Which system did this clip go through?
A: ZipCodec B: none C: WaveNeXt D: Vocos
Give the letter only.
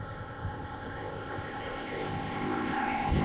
A